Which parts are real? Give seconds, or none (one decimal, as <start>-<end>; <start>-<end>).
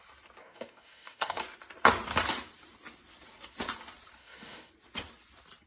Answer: 0.0-0.4; 1.4-4.2; 4.7-5.7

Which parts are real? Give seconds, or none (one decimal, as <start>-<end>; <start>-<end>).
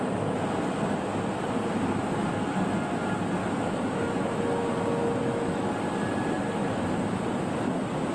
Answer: 0.0-3.4; 4.0-5.2; 5.7-8.1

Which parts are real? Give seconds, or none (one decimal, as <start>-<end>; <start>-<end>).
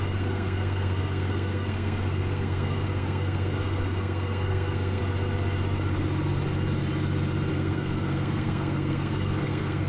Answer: 5.0-7.5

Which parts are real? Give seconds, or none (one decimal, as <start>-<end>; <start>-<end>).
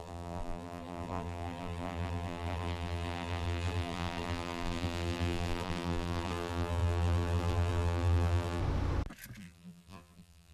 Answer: 8.6-9.4